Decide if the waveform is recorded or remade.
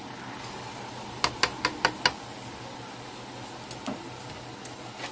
recorded